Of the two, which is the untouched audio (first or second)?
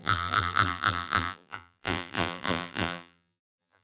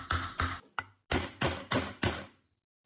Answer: second